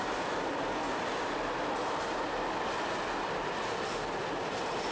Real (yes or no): yes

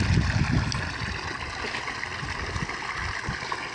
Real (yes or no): yes